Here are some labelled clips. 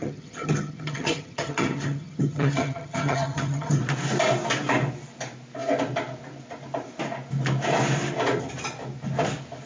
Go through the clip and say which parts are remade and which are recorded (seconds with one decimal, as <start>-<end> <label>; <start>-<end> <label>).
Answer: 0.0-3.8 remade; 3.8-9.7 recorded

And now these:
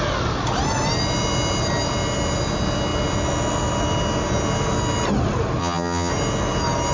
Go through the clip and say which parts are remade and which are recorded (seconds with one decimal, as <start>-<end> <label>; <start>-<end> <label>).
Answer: 0.0-5.6 recorded; 5.6-6.1 remade; 6.1-6.9 recorded

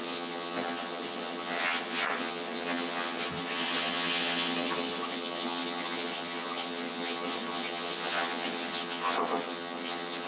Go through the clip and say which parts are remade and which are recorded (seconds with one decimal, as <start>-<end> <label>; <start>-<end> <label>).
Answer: 0.0-10.3 remade

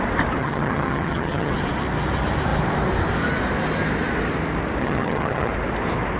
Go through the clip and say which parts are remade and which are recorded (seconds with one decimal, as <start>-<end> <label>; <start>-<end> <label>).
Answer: 0.0-0.4 recorded; 0.4-1.5 remade; 1.5-4.8 recorded; 4.8-5.5 remade; 5.5-6.2 recorded